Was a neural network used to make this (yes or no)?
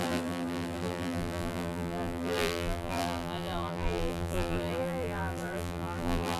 yes